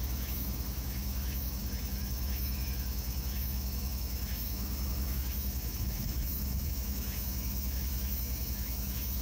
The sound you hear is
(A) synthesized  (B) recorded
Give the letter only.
A